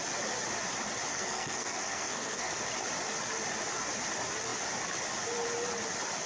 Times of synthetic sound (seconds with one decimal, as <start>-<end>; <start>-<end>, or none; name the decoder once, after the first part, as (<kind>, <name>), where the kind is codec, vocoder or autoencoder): 1.1-2.5 (codec, SNAC)